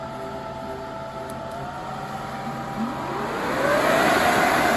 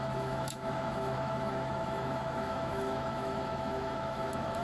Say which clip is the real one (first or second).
first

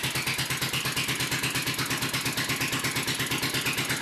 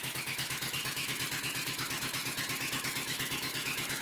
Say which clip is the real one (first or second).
first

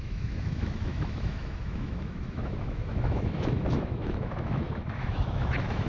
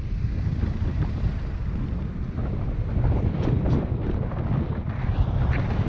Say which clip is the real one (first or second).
second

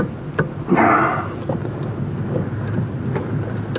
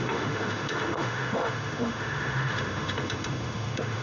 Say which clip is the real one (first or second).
first